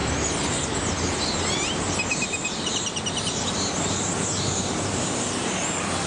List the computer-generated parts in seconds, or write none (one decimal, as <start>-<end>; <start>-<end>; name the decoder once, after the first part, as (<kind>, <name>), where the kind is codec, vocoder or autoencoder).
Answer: 0.0-6.1 (vocoder, BigVGAN v2)